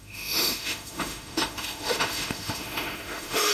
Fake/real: fake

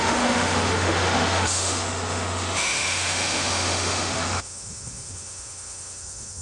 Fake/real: fake